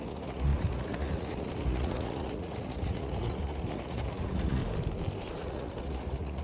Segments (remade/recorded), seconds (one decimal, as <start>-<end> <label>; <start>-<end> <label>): 0.0-4.6 remade; 4.6-5.3 recorded; 5.3-6.4 remade